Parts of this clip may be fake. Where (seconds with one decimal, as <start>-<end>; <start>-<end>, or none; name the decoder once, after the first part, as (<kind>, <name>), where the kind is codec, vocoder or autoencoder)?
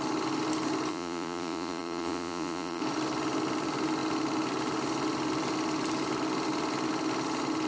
0.9-2.8 (vocoder, Vocos)